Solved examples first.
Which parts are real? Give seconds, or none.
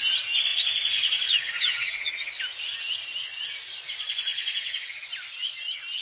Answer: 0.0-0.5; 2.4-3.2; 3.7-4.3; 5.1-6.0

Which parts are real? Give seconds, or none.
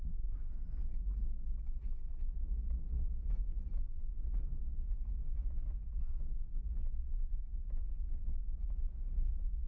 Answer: 0.5-9.7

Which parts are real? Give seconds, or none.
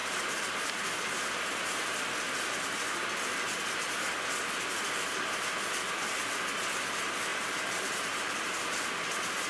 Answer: 0.0-7.3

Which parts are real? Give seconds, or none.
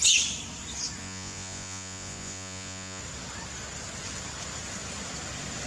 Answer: 0.0-1.0; 3.0-5.7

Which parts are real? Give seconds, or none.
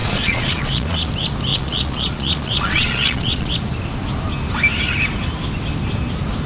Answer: 1.1-1.5; 3.5-6.5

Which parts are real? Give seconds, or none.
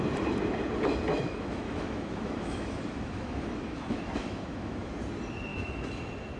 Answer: 0.0-1.1; 4.9-5.5; 6.0-6.4